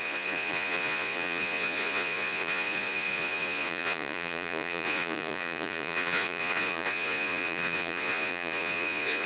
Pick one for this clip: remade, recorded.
remade